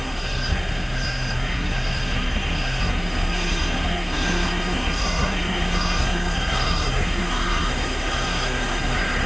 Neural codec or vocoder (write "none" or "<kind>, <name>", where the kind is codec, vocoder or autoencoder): codec, SNAC